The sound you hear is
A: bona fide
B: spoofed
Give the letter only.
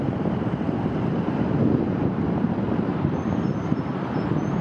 B